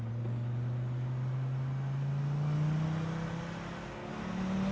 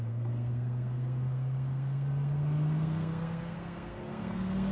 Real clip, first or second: first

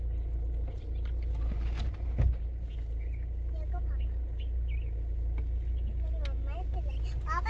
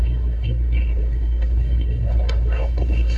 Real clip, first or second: first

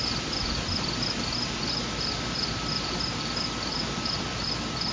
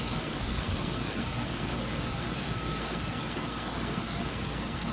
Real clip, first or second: first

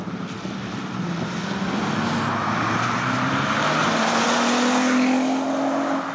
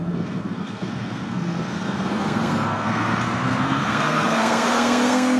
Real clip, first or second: first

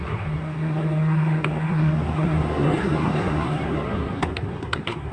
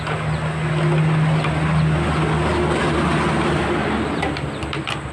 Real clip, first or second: second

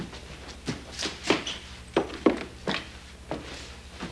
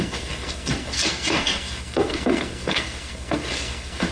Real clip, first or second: first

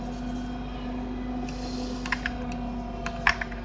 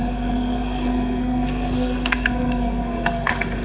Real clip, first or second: first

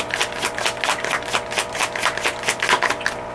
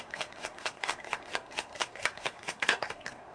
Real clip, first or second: first